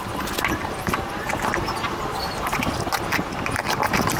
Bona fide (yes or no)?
yes